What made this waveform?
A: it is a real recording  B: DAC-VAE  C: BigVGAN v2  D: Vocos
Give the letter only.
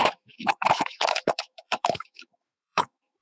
B